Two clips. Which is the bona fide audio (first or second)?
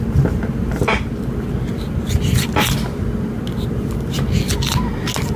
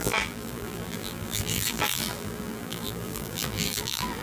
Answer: first